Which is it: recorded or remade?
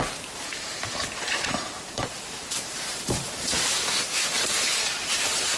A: remade